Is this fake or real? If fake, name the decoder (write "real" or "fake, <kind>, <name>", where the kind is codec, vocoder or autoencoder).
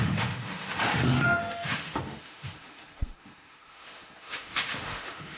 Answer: fake, autoencoder, DAC-VAE